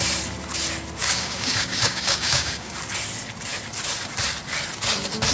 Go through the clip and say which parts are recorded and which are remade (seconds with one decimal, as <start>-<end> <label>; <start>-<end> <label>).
0.0-1.0 recorded; 1.0-2.7 remade; 2.7-5.3 recorded